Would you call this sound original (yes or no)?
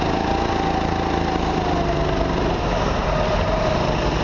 yes